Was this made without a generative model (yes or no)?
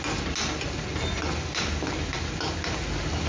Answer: yes